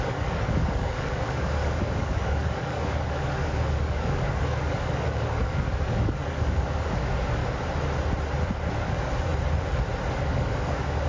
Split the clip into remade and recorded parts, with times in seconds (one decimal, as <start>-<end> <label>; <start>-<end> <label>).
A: 0.0-7.4 remade; 7.4-8.7 recorded; 8.7-9.3 remade; 9.3-10.1 recorded; 10.1-11.1 remade

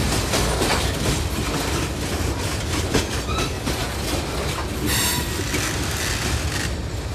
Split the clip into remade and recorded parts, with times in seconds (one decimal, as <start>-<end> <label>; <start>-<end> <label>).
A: 0.0-7.1 recorded

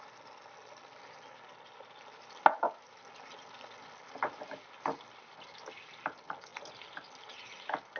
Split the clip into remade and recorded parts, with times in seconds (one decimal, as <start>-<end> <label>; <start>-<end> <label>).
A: 0.0-8.0 recorded

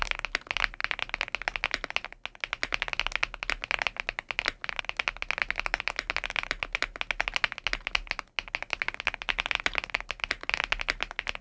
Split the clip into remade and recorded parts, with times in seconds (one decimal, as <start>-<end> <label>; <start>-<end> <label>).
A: 0.0-11.4 recorded

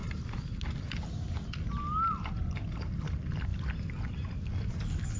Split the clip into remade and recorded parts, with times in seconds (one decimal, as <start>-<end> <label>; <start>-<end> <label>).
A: 0.0-5.2 recorded

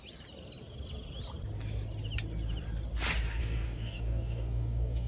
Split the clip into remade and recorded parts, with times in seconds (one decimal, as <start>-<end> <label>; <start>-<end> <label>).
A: 0.0-3.4 recorded; 3.4-5.1 remade

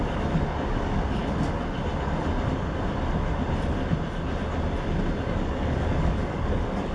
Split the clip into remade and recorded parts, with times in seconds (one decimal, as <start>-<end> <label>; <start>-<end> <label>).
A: 0.0-1.2 remade; 1.2-5.3 recorded; 5.3-6.9 remade